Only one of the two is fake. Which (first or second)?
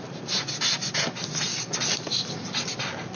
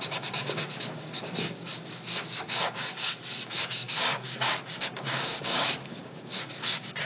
second